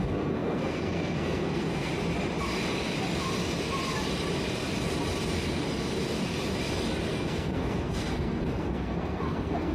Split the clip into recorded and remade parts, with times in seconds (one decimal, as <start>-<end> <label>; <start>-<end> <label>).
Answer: 0.0-1.9 remade; 1.9-7.1 recorded; 7.1-9.7 remade